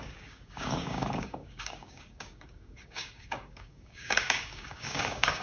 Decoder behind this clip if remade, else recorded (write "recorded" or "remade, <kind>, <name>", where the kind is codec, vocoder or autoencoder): remade, codec, DAC